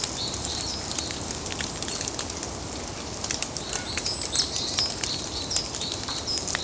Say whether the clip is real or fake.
real